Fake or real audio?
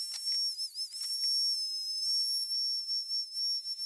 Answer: real